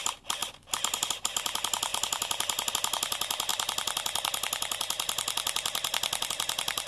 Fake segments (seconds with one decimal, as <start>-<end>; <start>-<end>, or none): none